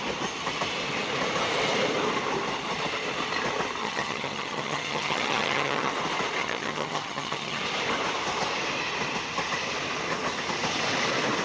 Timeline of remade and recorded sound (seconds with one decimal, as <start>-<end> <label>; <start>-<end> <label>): 0.0-3.8 recorded; 3.8-5.9 remade; 5.9-6.4 recorded; 6.4-7.6 remade; 7.6-11.4 recorded